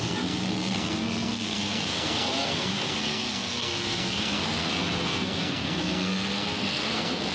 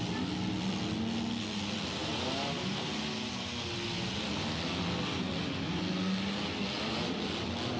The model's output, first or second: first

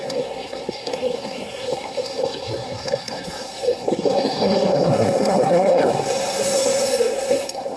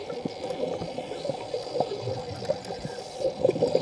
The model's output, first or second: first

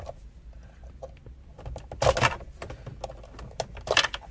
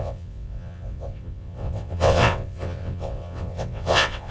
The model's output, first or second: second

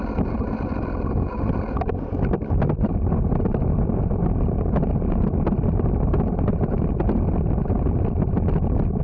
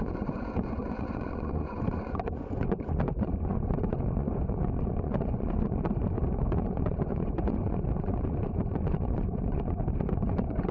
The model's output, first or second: second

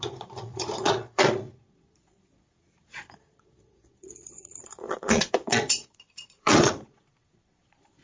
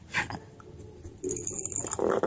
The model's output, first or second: first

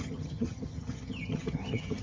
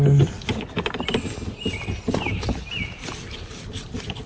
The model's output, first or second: first